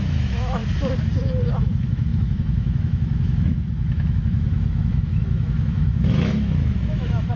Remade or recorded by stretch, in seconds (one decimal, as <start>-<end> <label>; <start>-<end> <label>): 0.0-0.6 remade; 0.6-1.5 recorded; 1.5-7.4 remade